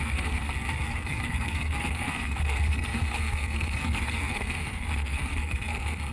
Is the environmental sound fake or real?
fake